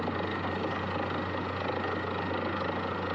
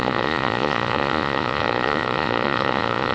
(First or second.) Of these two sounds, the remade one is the second